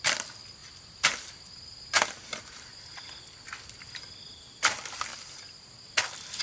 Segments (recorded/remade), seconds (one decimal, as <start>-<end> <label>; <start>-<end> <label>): 0.0-0.6 recorded; 0.6-2.6 remade; 2.6-5.1 recorded; 5.1-5.7 remade; 5.7-6.4 recorded